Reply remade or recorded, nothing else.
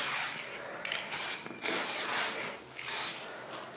recorded